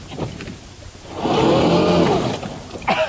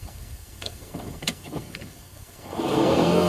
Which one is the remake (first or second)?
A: second